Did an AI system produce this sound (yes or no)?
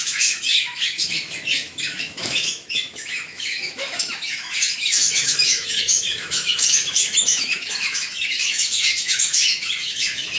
yes